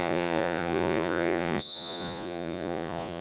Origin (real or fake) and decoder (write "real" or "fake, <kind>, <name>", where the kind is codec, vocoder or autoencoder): fake, vocoder, Vocos